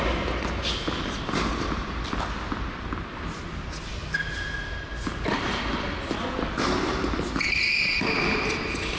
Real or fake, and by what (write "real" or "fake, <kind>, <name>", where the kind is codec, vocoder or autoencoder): real